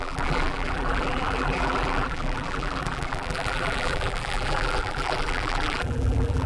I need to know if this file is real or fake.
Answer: fake